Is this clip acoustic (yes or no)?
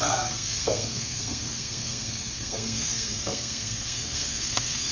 no